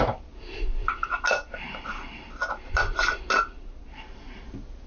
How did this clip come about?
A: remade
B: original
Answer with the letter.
B